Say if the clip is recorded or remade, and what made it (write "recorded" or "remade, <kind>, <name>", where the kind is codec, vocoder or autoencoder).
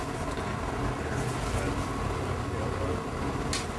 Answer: recorded